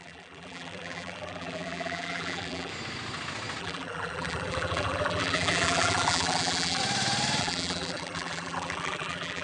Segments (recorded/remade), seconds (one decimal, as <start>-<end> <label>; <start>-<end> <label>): 0.0-2.7 remade; 2.7-3.6 recorded; 3.6-6.8 remade; 6.8-7.4 recorded; 7.4-9.4 remade